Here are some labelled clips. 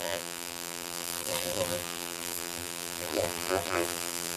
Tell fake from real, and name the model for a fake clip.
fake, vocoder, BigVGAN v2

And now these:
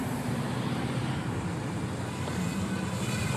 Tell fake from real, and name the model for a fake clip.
fake, vocoder, BigVGAN v2